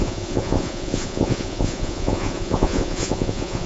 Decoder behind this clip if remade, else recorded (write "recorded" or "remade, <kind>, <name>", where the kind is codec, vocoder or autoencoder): remade, vocoder, Vocos